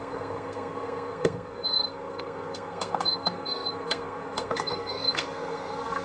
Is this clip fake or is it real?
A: fake